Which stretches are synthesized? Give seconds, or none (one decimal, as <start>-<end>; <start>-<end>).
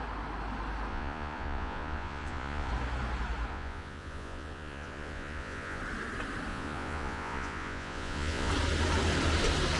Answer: 0.9-2.7; 3.5-5.8; 6.5-8.5